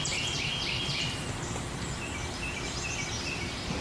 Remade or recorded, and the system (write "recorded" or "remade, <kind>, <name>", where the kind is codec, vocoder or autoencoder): recorded